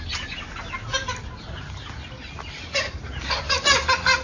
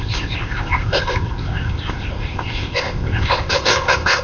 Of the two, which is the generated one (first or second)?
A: second